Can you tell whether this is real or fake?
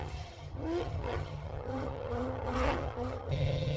fake